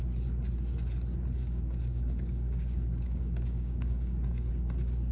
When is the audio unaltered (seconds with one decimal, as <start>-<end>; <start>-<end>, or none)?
0.0-1.4; 4.5-5.1